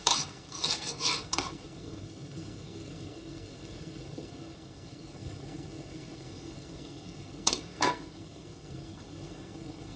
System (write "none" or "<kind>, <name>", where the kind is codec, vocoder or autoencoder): codec, SNAC